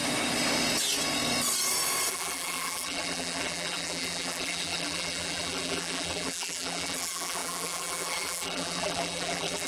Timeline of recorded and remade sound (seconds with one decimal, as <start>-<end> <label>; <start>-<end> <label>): 0.0-2.1 recorded; 2.1-9.7 remade